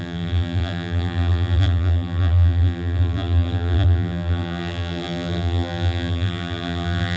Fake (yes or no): yes